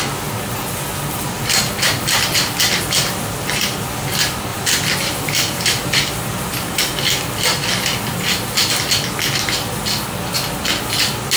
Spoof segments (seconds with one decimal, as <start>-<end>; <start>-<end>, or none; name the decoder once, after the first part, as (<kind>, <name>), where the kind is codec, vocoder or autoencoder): 4.5-6.8 (vocoder, BigVGAN v2)